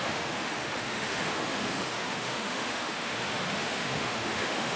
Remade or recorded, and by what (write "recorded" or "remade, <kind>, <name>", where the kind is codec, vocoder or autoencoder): remade, autoencoder, DAC-VAE